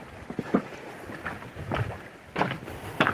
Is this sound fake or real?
fake